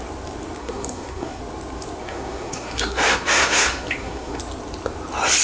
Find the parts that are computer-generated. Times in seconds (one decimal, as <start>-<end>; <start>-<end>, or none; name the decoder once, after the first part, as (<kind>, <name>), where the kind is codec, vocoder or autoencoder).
0.6-1.4 (codec, SNAC); 2.0-4.4

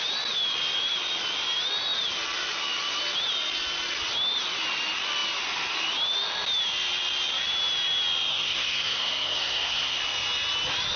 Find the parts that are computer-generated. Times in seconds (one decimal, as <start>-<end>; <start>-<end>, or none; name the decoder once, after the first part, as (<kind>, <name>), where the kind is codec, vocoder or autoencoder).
8.3-10.0 (codec, SNAC)

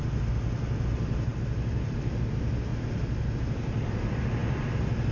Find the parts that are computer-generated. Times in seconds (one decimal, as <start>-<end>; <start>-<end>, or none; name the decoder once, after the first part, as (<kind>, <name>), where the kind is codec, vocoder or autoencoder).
none

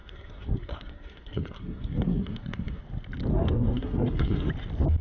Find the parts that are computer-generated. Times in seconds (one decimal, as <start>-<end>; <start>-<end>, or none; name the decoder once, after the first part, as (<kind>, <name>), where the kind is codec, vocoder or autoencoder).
0.0-2.8 (codec, SNAC); 3.3-4.5

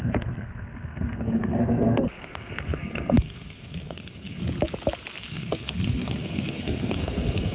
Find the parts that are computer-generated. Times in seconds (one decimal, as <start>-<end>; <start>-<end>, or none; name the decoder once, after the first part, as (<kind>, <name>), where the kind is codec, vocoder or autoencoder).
0.0-4.4 (codec, SNAC); 5.2-7.5

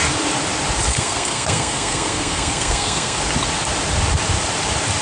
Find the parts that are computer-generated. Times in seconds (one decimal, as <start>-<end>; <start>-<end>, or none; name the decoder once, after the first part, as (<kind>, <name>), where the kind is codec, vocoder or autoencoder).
0.9-3.2 (codec, SNAC)

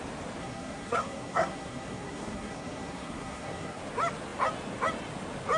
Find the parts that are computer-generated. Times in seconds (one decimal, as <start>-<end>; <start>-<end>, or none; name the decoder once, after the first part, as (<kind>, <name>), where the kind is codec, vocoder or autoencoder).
0.4-3.8 (codec, SNAC)

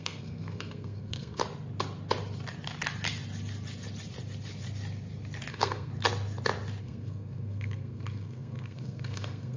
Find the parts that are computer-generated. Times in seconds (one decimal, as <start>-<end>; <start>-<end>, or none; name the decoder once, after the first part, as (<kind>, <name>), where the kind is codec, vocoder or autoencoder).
0.0-1.4 (codec, SNAC); 5.5-5.9; 6.8-9.6